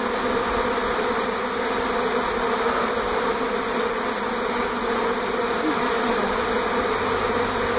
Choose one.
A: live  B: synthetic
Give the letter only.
A